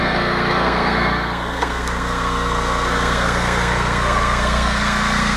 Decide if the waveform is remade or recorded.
remade